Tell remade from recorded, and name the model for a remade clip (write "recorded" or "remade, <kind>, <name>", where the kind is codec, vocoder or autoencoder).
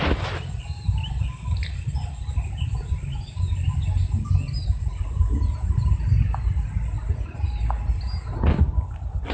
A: recorded